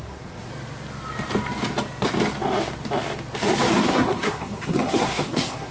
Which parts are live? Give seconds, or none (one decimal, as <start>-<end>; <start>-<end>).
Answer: 0.5-3.9